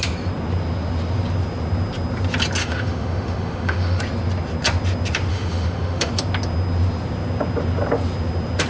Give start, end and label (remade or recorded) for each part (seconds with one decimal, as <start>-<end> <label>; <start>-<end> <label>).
0.0-2.6 recorded; 2.6-4.0 remade; 4.0-5.3 recorded; 5.3-6.1 remade; 6.1-8.7 recorded